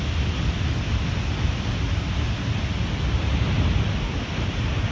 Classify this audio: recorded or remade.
recorded